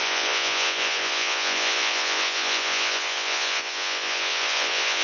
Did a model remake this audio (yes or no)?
yes